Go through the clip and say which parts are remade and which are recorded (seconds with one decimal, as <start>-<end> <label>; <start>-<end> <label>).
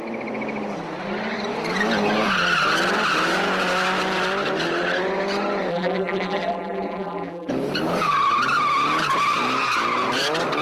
0.0-5.7 recorded; 5.7-7.5 remade; 7.5-10.6 recorded